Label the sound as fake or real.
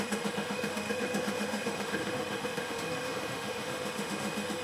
fake